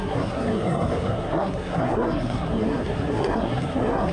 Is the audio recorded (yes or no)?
no